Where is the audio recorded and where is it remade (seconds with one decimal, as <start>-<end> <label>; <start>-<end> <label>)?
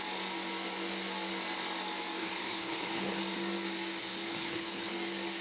0.0-2.2 recorded; 2.2-3.2 remade; 3.2-4.0 recorded; 4.0-4.9 remade; 4.9-5.4 recorded